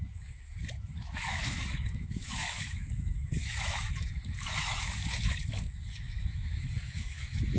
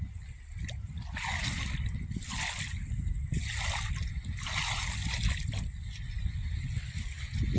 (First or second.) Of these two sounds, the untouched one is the second